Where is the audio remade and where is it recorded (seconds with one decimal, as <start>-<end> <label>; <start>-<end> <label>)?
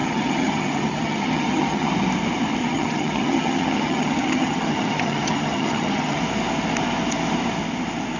0.0-1.9 remade; 1.9-2.6 recorded; 2.6-6.2 remade; 6.2-8.2 recorded